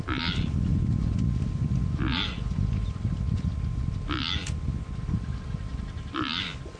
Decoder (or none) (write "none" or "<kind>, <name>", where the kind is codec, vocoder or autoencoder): none